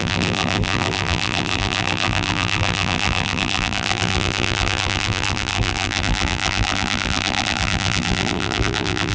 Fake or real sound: fake